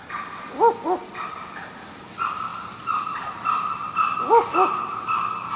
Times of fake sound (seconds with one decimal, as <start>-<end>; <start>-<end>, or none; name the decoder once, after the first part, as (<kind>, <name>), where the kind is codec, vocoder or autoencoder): none